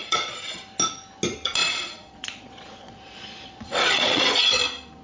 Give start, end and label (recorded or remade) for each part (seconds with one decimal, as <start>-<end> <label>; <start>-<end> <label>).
0.0-0.6 remade; 0.6-1.6 recorded; 1.6-4.6 remade; 4.6-5.0 recorded